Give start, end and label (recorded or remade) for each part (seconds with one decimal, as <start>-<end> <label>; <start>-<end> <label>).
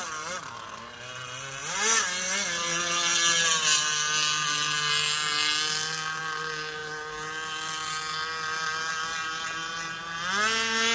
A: 0.0-10.9 recorded